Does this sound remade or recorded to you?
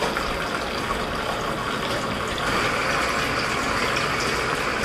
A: recorded